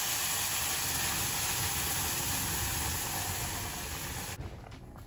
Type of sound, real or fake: real